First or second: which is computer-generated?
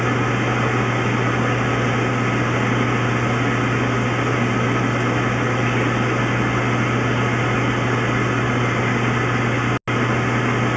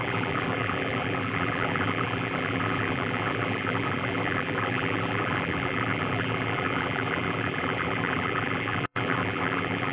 second